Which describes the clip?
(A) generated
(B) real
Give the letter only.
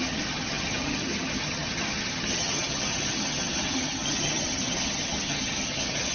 A